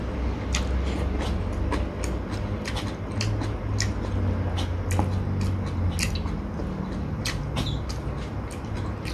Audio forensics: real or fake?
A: real